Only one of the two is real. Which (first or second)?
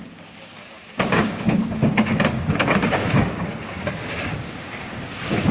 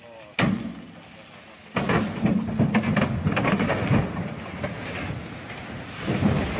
second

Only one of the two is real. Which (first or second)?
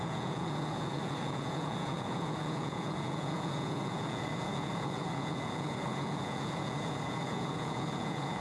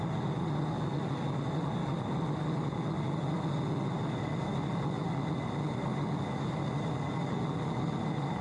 second